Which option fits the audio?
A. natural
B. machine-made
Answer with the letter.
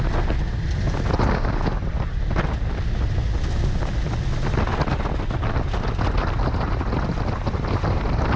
A